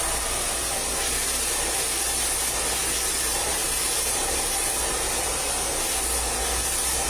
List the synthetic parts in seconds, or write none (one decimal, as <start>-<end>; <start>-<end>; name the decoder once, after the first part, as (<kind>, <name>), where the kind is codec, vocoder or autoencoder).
3.5-4.7 (vocoder, BigVGAN v2)